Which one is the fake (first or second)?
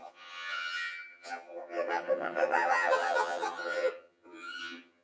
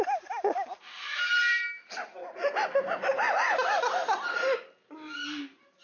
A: first